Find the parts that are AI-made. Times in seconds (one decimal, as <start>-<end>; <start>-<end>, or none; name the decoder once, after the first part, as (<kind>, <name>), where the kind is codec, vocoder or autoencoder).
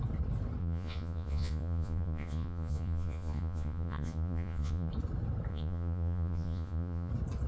0.6-4.9 (vocoder, Vocos); 5.5-7.1